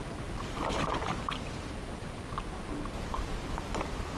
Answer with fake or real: real